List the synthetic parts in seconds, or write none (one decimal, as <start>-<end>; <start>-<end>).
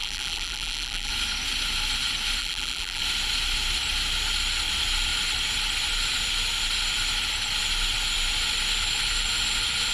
0.0-1.1; 2.4-3.0